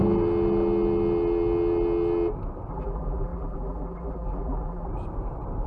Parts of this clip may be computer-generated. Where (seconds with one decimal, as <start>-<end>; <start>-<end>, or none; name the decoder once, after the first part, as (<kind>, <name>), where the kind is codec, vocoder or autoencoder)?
2.7-4.9 (vocoder, BigVGAN v2)